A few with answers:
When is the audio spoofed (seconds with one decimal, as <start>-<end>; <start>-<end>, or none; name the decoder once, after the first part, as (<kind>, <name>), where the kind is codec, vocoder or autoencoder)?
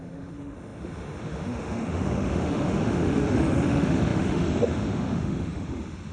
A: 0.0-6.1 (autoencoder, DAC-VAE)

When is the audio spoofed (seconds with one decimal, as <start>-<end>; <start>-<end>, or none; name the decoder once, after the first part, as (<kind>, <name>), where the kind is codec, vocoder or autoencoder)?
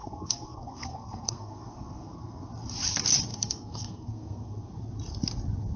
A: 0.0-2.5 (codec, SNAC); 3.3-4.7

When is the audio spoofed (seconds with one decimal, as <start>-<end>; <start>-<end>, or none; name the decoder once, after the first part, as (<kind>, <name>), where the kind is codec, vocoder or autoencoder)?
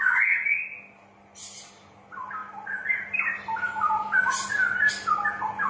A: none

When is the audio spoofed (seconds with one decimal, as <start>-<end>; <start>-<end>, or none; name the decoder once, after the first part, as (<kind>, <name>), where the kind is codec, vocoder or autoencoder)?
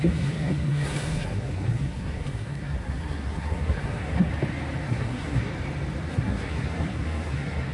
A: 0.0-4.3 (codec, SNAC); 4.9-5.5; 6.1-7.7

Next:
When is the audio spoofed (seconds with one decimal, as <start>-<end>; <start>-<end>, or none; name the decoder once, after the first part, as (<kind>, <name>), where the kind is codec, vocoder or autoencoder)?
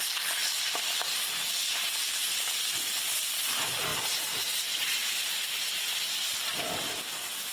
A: none